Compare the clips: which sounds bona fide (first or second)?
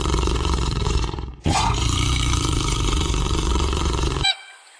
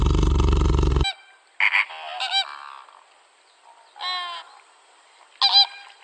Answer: second